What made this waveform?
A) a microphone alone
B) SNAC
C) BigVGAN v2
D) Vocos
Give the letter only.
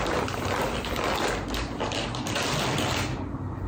A